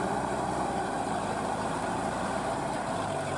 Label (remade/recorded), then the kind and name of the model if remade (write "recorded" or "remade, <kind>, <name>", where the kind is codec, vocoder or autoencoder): remade, vocoder, BigVGAN v2